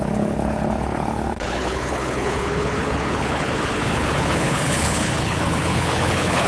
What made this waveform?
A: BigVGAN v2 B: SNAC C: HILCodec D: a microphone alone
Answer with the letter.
C